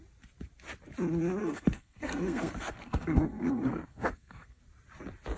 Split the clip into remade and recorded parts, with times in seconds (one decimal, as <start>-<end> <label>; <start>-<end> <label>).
0.0-1.4 recorded; 1.4-4.6 remade; 4.6-5.4 recorded